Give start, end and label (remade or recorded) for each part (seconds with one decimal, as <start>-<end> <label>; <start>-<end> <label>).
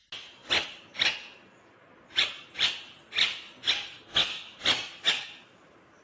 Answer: 0.0-6.0 recorded